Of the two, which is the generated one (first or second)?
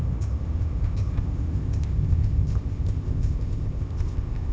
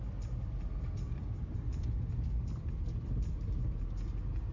first